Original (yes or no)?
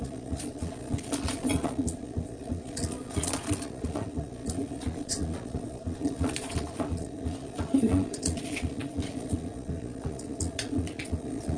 no